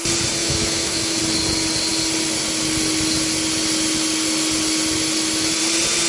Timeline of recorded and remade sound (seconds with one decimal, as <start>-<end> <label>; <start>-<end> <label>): 0.0-0.4 recorded; 0.4-1.2 remade; 1.2-6.1 recorded